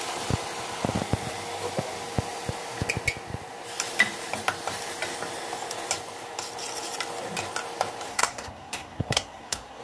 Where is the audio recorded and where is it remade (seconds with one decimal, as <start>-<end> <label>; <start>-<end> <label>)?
0.0-8.1 recorded; 8.1-9.8 remade